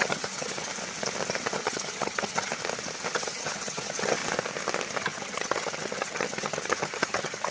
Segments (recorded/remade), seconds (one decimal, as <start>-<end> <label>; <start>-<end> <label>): 0.0-0.7 remade; 0.7-1.5 recorded; 1.5-2.5 remade; 2.5-3.1 recorded; 3.1-4.2 remade; 4.2-5.0 recorded; 5.0-7.5 remade

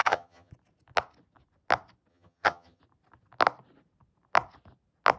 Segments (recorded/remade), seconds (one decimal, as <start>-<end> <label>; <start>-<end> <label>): 0.0-0.5 remade; 0.5-2.1 recorded; 2.1-2.8 remade; 2.8-5.2 recorded

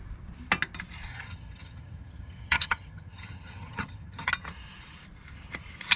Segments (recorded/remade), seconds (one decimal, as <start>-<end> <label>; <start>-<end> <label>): 0.0-1.1 recorded; 1.1-4.3 remade; 4.3-6.0 recorded

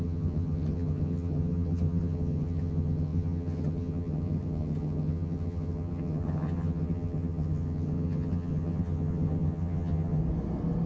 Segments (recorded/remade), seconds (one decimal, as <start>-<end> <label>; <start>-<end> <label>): 0.0-10.2 remade; 10.2-10.9 recorded